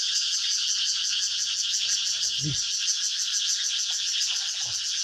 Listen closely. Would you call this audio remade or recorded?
recorded